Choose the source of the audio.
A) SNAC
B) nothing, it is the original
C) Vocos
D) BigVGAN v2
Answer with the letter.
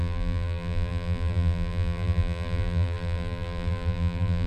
D